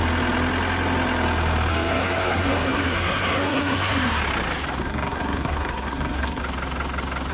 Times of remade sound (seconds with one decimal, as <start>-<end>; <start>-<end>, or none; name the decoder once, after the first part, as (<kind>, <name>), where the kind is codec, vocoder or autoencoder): 1.7-4.2 (codec, SNAC); 4.8-6.4